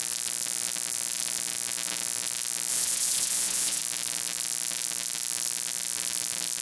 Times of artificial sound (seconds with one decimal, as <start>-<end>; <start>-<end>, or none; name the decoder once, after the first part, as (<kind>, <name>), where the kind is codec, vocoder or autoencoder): 2.7-3.8 (vocoder, Vocos)